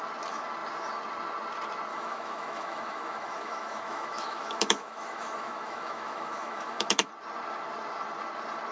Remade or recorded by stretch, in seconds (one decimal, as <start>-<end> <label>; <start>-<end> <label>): 0.0-1.9 recorded; 1.9-7.1 remade; 7.1-8.7 recorded